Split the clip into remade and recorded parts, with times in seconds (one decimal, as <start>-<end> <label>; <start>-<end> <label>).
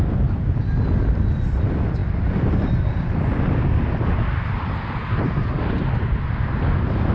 0.0-7.1 recorded